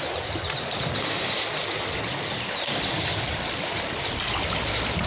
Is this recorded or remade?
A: recorded